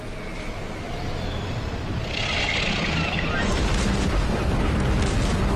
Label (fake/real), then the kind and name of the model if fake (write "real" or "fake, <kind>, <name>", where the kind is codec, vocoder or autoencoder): real